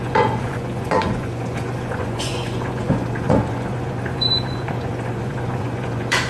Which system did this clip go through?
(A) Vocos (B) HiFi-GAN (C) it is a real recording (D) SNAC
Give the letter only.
A